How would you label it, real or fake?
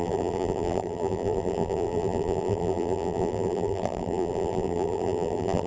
fake